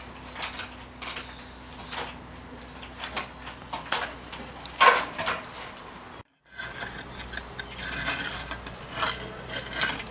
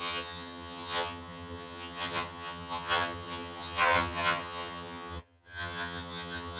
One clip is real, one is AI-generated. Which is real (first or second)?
first